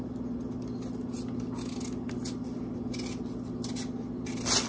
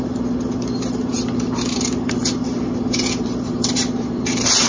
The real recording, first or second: first